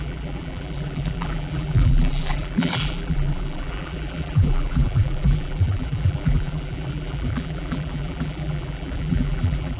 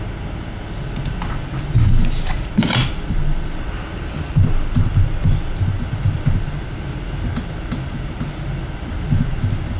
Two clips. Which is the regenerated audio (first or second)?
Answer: first